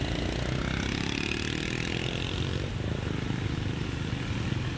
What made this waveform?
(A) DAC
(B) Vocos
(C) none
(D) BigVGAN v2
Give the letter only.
C